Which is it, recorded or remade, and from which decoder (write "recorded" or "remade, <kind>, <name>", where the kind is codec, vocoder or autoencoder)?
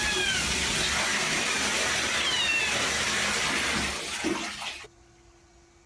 recorded